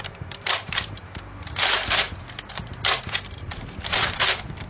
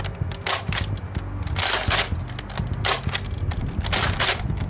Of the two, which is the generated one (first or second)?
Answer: first